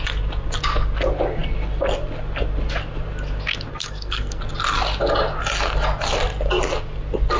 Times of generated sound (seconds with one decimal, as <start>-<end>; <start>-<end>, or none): 3.7-4.4